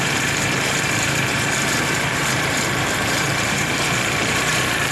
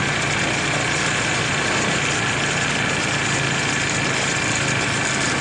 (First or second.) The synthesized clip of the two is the first